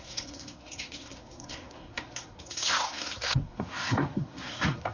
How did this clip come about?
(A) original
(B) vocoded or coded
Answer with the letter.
B